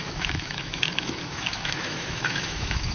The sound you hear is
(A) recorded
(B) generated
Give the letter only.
B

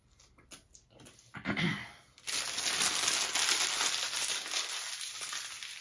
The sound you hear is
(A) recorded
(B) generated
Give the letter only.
A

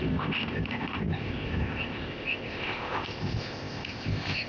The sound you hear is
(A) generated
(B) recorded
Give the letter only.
A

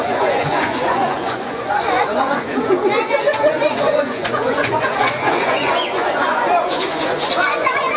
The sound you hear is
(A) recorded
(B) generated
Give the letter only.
B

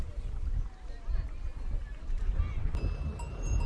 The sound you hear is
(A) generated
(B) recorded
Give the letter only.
B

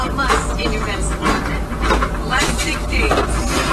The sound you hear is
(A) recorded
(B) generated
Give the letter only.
A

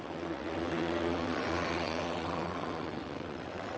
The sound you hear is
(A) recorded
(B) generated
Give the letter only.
B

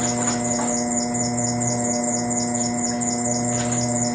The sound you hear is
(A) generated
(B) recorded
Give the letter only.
B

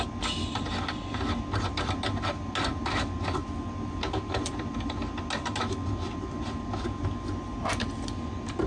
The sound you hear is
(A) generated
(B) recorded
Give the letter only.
B